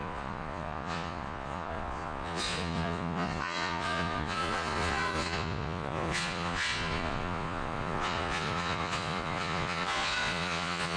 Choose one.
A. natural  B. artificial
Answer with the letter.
B